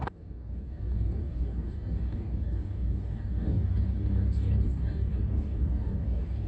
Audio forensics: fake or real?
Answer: fake